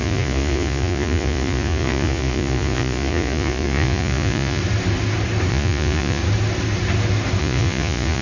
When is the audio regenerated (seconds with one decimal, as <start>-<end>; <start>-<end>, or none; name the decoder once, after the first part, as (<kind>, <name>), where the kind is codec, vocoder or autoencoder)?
0.0-4.6 (vocoder, Vocos); 5.5-6.2; 7.4-8.2